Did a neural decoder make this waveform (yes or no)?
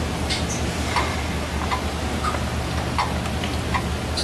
no